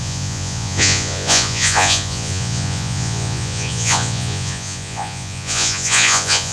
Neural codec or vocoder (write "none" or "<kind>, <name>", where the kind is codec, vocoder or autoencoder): vocoder, Vocos